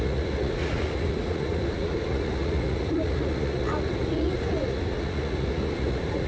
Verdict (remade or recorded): remade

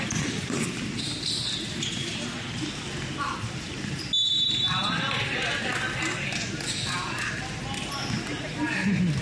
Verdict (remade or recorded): recorded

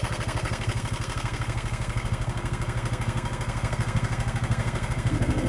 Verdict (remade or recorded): remade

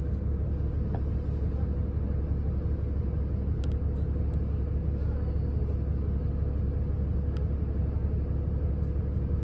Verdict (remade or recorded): recorded